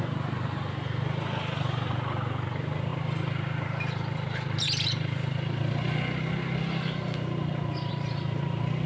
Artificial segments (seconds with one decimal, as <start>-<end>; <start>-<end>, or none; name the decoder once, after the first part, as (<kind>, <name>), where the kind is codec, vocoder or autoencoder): none